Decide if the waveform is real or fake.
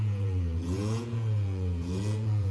fake